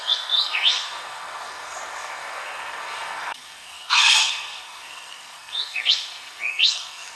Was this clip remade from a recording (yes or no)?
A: yes